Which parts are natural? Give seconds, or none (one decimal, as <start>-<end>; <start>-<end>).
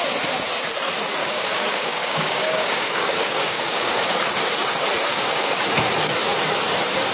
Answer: 0.0-1.2; 4.1-5.1; 5.6-7.1